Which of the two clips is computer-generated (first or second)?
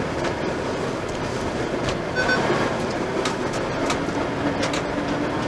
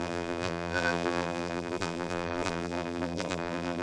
second